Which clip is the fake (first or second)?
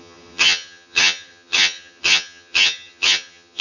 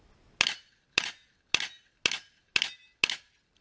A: first